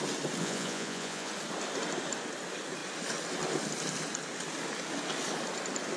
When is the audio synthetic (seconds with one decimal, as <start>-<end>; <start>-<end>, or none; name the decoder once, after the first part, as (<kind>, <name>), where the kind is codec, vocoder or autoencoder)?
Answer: 0.4-1.3 (vocoder, Vocos)